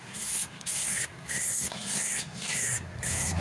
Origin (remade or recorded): remade